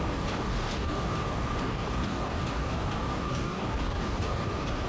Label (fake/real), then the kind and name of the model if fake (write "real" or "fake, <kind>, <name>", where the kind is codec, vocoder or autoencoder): fake, codec, DAC